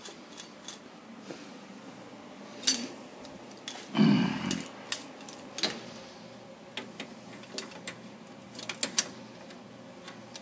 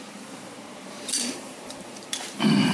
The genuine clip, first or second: first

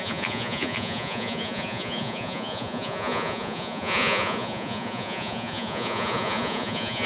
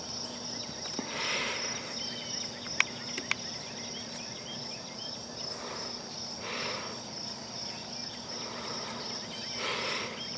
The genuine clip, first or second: second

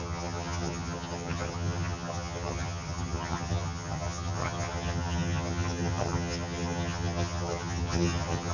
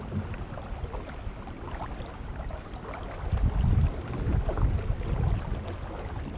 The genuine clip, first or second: second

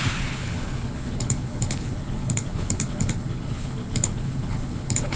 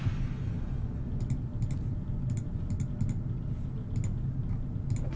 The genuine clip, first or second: second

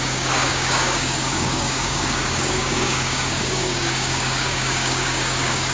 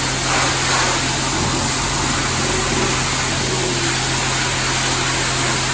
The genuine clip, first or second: second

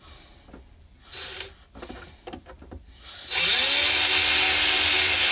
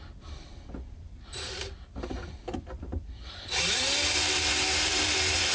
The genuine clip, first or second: first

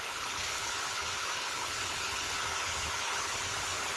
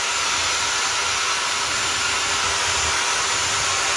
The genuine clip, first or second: second